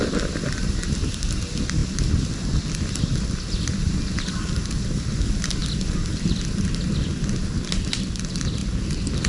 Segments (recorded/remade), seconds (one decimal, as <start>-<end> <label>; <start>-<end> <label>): 0.0-9.3 recorded